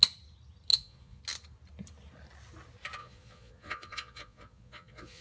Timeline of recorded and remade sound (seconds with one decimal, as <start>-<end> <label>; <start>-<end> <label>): 0.0-0.7 recorded; 0.7-1.2 remade; 1.2-3.0 recorded; 3.0-5.2 remade